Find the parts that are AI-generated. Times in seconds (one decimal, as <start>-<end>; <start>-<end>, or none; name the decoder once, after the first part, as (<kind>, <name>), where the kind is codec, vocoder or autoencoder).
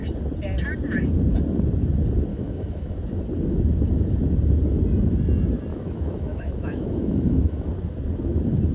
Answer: 2.3-3.0 (autoencoder, DAC-VAE); 5.7-7.7